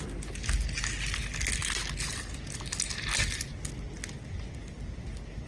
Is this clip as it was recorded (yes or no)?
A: yes